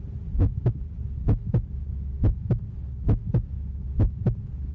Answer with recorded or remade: recorded